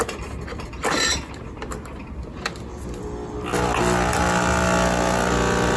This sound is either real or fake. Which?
real